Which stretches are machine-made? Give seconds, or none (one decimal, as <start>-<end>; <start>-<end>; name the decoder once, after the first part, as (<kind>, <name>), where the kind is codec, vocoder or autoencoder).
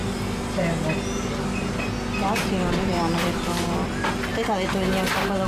none